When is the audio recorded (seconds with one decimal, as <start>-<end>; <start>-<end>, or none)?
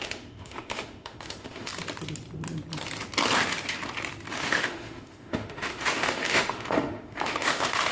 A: 1.7-4.3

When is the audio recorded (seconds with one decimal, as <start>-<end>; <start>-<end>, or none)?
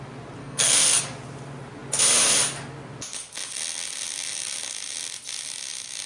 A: 0.0-0.4; 1.0-6.1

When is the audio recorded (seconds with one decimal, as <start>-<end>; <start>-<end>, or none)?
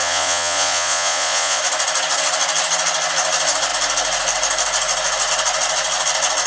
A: 1.6-6.5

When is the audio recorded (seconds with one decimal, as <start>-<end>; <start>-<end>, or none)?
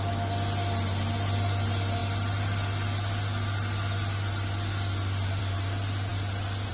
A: 0.0-6.7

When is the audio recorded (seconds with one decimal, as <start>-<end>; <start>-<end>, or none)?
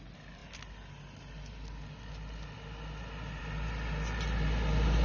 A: 0.0-5.0